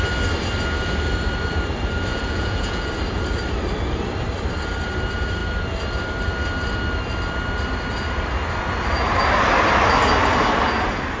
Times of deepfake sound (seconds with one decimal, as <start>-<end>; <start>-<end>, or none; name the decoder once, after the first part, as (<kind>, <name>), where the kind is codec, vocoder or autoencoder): 2.1-2.9 (vocoder, Vocos)